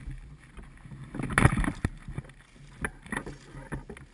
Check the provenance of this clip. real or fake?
real